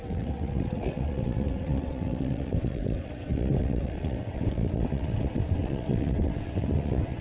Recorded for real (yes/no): no